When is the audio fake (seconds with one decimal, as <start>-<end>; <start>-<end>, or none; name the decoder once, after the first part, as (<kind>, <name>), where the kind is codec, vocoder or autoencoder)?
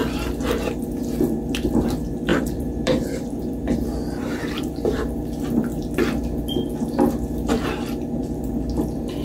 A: 2.3-5.2 (vocoder, BigVGAN v2)